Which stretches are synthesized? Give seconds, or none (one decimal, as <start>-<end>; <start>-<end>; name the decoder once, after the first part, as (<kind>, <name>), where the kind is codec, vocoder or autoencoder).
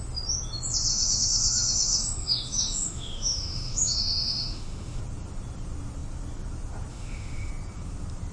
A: 0.9-5.0 (autoencoder, DAC-VAE); 6.9-7.5